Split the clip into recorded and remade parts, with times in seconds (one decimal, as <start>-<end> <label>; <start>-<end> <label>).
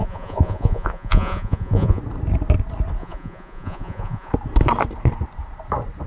0.0-2.0 remade; 2.0-3.0 recorded; 3.0-4.3 remade; 4.3-6.1 recorded